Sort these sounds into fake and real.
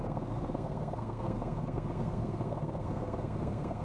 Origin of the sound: fake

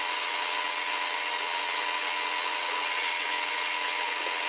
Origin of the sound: fake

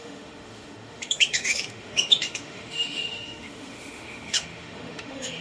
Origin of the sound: fake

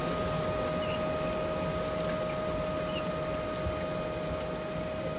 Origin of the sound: real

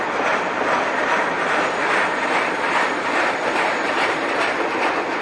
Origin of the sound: real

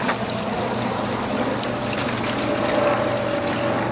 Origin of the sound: real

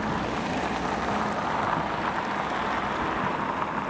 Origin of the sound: real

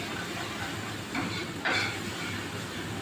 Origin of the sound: real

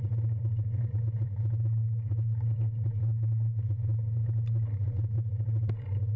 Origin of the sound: real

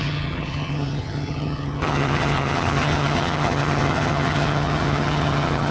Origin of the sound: fake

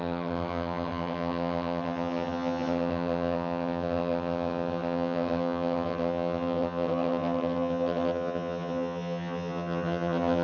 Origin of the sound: fake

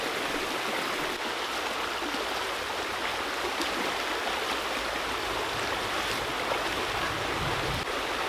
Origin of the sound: real